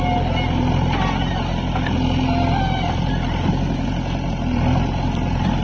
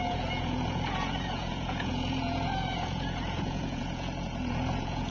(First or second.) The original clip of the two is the first